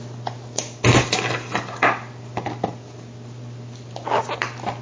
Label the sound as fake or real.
real